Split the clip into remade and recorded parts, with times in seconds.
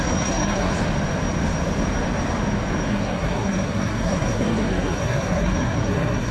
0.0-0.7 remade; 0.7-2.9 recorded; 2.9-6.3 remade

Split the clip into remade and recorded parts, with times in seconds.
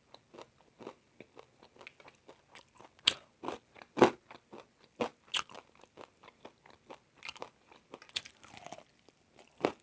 0.0-9.8 recorded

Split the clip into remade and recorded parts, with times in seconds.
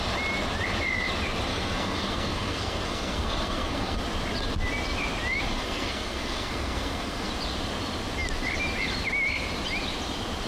0.0-1.5 recorded; 1.5-4.0 remade; 4.0-5.5 recorded; 5.5-7.3 remade; 7.3-10.5 recorded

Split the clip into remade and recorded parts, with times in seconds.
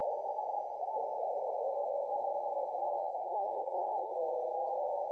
0.0-3.0 recorded; 3.0-4.1 remade; 4.1-5.1 recorded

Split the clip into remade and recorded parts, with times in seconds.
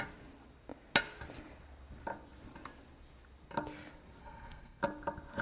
0.0-4.2 recorded; 4.2-4.8 remade; 4.8-5.4 recorded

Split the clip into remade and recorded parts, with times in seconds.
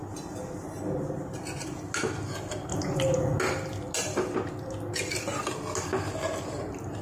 0.0-7.0 recorded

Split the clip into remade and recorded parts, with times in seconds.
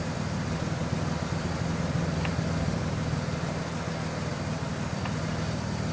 0.0-5.9 recorded